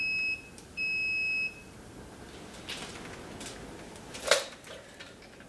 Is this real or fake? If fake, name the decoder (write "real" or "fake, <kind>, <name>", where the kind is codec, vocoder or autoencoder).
real